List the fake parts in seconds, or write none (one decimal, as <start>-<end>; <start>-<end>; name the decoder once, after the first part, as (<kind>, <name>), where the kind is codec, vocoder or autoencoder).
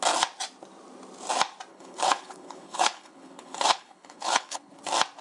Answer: 1.7-4.8 (codec, HILCodec)